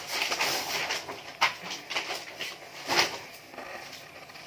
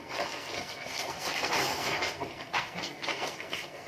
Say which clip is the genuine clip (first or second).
first